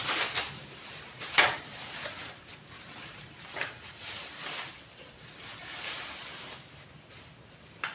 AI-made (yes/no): yes